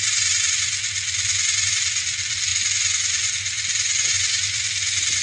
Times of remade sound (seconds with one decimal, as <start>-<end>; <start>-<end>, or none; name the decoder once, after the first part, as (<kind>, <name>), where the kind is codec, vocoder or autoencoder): none